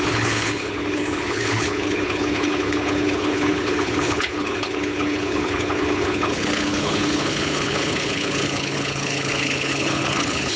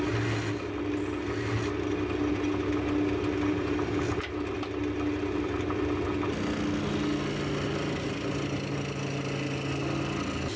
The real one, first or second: second